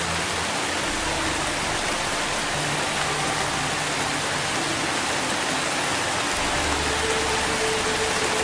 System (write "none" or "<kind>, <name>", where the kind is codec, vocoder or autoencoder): none